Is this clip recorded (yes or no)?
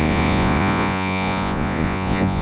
no